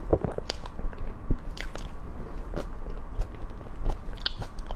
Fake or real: real